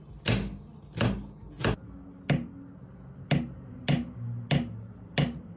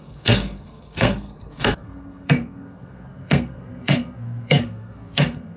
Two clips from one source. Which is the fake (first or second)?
second